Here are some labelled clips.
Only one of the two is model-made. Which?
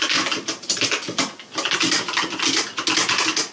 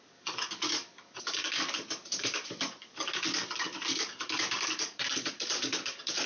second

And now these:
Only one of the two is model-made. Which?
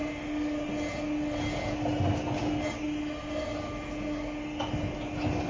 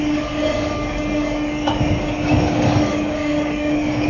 second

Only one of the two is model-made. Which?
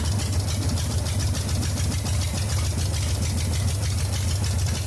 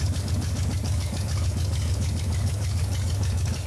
second